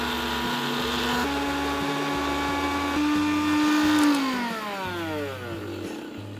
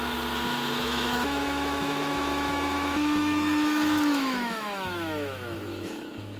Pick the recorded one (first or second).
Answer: first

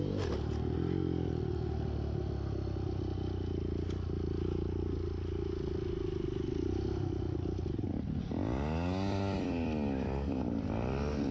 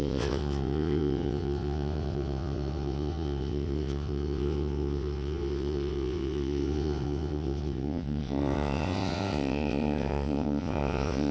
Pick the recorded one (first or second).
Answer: first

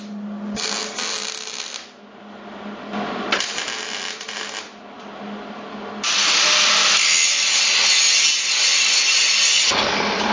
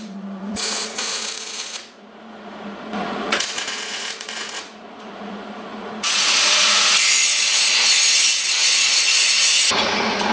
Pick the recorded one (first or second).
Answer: first